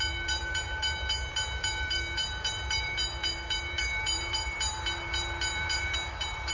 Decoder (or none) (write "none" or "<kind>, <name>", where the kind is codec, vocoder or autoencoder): vocoder, BigVGAN v2